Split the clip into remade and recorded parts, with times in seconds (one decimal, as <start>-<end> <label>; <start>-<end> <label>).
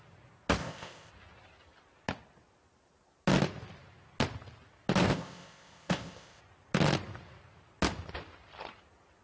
0.0-0.6 recorded; 0.6-1.1 remade; 1.1-5.0 recorded; 5.0-6.4 remade; 6.4-9.2 recorded